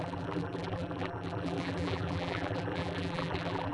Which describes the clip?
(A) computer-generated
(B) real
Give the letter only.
A